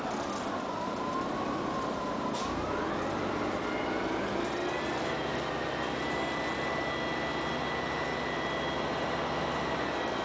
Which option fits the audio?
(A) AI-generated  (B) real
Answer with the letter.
B